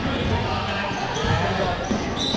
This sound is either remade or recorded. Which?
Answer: remade